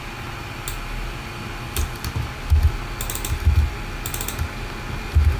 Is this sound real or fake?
real